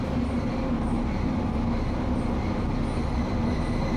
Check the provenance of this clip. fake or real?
real